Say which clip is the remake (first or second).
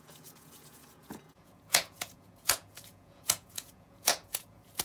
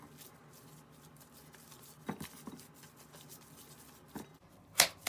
first